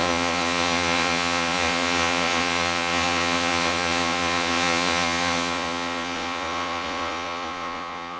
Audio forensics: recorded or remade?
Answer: remade